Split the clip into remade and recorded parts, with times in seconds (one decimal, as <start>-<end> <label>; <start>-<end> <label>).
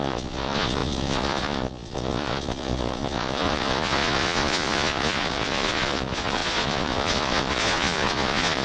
0.0-8.6 remade